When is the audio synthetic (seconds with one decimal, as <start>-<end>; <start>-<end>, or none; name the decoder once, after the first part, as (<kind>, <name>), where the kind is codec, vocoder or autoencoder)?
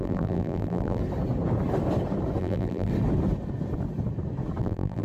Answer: 0.0-1.0 (vocoder, BigVGAN v2); 2.4-2.9; 4.6-5.0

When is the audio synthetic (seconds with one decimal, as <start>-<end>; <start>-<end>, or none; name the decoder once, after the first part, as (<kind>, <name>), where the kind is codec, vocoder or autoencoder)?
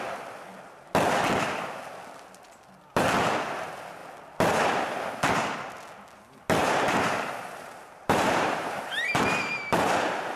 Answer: 6.6-9.2 (vocoder, BigVGAN v2)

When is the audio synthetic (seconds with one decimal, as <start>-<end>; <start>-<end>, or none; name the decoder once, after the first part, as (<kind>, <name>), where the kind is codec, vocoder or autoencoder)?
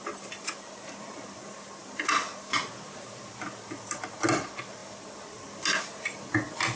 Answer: none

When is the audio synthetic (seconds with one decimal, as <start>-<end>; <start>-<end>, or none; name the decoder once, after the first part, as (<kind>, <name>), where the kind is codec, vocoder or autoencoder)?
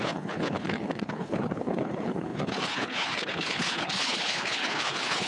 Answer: 0.0-5.3 (codec, HILCodec)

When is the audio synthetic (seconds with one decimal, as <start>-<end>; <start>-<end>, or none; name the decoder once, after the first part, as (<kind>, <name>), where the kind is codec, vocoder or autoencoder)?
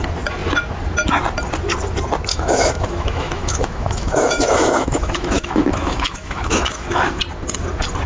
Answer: 2.3-7.2 (autoencoder, DAC-VAE)